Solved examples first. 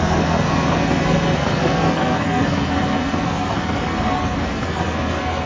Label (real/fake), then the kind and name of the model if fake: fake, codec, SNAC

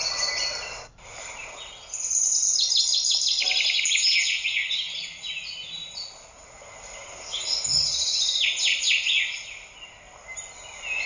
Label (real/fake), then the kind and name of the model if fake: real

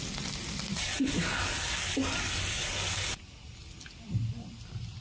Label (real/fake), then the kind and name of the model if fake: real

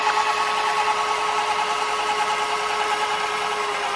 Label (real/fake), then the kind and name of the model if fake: real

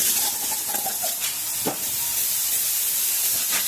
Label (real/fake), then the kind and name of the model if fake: real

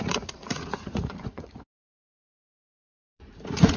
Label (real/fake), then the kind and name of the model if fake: fake, vocoder, Vocos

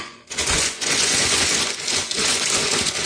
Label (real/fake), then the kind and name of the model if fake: fake, vocoder, Vocos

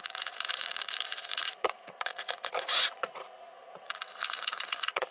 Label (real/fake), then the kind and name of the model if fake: fake, vocoder, Vocos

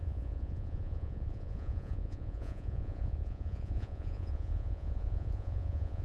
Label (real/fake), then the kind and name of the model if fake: fake, vocoder, Vocos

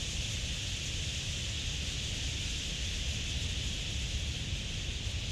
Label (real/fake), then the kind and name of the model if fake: real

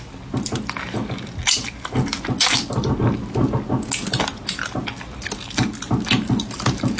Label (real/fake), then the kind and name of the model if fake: real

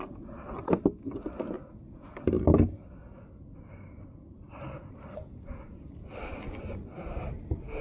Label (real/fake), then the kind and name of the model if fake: real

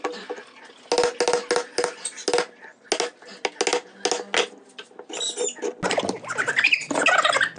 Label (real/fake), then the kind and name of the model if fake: real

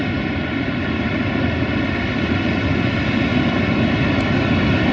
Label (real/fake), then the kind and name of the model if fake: real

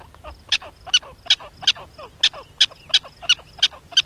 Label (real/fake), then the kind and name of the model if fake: real